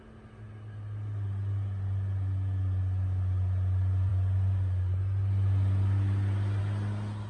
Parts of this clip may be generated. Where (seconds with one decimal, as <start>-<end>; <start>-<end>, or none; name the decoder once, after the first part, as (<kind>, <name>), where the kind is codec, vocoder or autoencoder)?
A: none